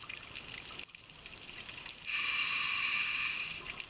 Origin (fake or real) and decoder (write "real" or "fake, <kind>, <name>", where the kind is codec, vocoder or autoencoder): real